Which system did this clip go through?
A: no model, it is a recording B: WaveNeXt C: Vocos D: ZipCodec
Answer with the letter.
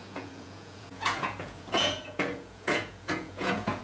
C